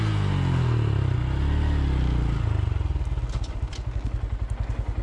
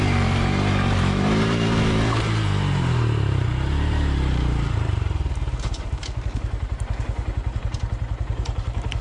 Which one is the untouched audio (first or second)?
first